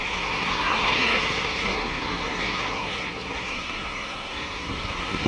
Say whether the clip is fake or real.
fake